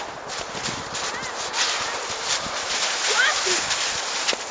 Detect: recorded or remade recorded